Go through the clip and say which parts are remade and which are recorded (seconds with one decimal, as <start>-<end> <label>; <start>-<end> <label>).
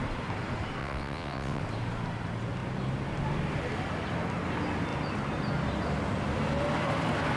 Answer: 0.0-0.8 recorded; 0.8-1.6 remade; 1.6-7.4 recorded